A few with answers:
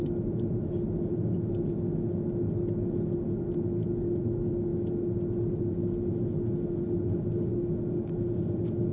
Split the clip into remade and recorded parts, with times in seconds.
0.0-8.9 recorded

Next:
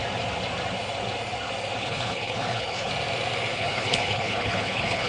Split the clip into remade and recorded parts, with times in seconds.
0.0-1.8 recorded; 1.8-2.9 remade; 2.9-3.5 recorded; 3.5-5.1 remade

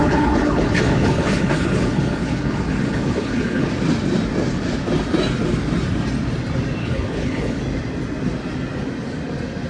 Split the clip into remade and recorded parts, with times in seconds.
0.0-3.7 remade; 3.7-6.8 recorded; 6.8-7.6 remade; 7.6-9.7 recorded

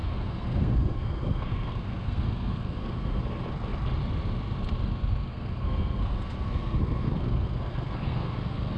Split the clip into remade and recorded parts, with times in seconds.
0.0-3.2 remade; 3.2-5.3 recorded; 5.3-8.8 remade

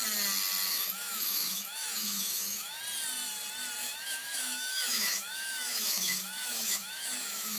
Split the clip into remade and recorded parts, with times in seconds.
0.0-0.7 recorded; 0.7-2.8 remade; 2.8-3.8 recorded; 3.8-7.6 remade

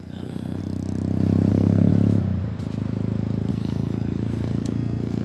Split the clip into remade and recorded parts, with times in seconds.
0.0-0.6 remade; 0.6-1.5 recorded; 1.5-1.9 remade; 1.9-3.5 recorded; 3.5-5.2 remade

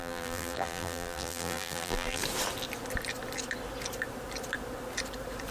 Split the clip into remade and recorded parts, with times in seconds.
0.0-2.2 remade; 2.2-5.5 recorded